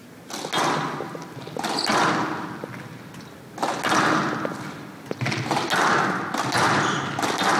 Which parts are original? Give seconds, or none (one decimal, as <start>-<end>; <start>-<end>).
0.0-7.6